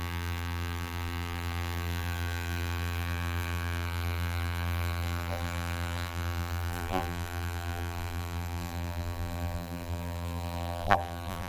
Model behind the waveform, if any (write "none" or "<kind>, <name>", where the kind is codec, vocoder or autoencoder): vocoder, BigVGAN v2